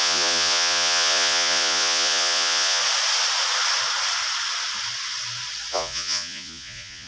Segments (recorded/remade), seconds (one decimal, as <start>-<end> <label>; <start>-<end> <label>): 0.0-2.8 remade; 2.8-5.7 recorded; 5.7-7.1 remade